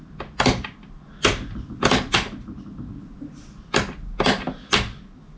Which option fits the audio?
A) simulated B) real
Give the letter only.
B